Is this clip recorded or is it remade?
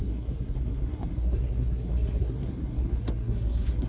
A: remade